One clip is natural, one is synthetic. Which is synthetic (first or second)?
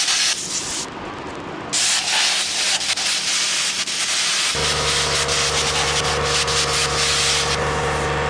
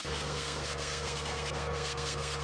second